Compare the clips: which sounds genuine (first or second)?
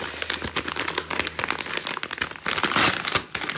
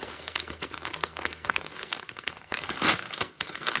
first